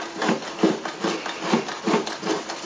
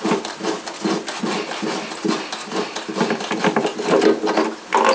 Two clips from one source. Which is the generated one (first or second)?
first